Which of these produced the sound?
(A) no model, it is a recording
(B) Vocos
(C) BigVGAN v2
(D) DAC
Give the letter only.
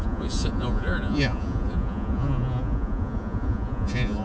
B